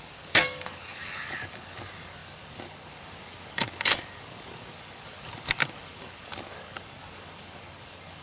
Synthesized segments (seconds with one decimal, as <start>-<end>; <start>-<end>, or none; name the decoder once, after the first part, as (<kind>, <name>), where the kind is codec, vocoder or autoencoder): 0.0-8.2 (codec, DAC)